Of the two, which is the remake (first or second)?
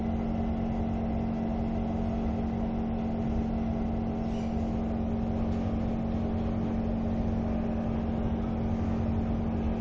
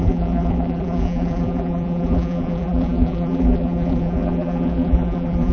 second